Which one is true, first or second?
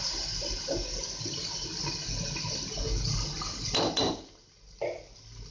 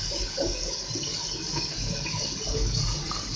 first